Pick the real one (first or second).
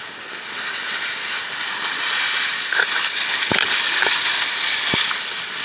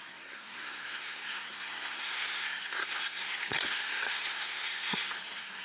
first